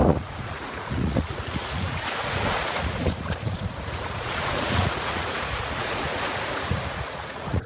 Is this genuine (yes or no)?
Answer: no